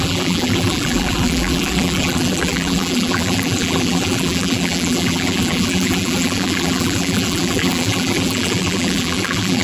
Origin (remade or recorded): remade